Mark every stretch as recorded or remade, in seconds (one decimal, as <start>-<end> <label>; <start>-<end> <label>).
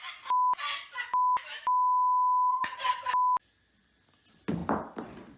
0.0-2.5 recorded; 2.5-3.1 remade; 3.1-5.4 recorded